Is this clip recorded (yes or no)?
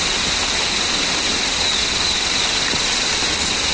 yes